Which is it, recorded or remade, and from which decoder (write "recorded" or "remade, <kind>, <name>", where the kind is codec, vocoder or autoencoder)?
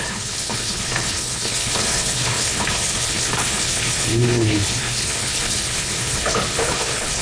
remade, codec, HILCodec